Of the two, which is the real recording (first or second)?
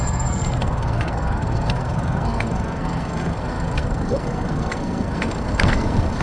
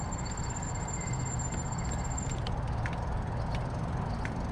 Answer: second